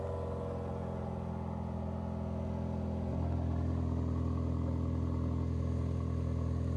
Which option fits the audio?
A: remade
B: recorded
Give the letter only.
B